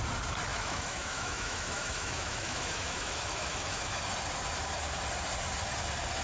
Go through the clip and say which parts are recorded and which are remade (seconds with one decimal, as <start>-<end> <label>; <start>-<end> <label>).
0.0-0.5 recorded; 0.5-4.0 remade; 4.0-6.2 recorded